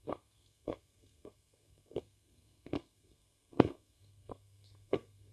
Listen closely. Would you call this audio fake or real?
fake